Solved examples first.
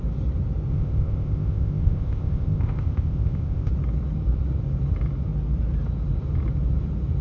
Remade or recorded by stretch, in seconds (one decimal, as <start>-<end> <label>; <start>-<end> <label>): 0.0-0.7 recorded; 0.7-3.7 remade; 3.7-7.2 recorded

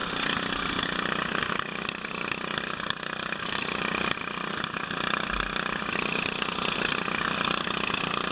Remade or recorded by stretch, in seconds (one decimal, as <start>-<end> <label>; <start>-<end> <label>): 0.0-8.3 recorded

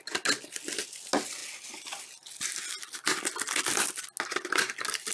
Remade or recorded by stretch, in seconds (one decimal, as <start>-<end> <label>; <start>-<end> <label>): 0.0-5.1 recorded

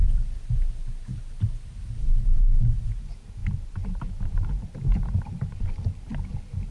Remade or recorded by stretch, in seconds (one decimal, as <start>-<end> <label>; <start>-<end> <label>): 0.0-2.1 recorded; 2.1-6.1 remade; 6.1-6.7 recorded